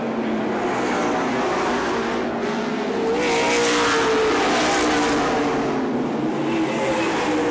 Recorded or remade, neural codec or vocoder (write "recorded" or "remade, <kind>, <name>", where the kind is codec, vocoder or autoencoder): recorded